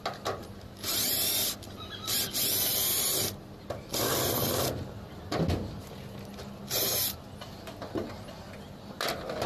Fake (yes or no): no